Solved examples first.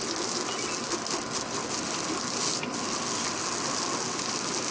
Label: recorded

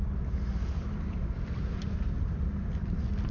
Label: recorded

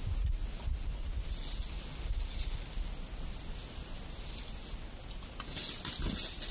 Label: recorded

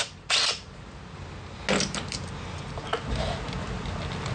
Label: recorded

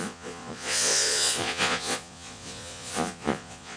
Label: remade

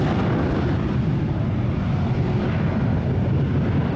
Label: recorded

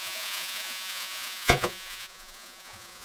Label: remade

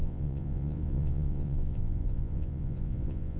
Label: remade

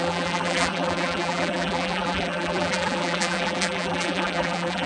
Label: remade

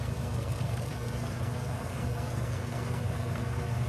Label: remade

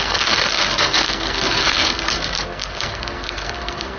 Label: remade